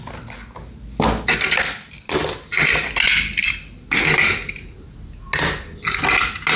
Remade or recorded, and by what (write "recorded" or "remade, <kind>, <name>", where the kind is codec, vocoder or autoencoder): recorded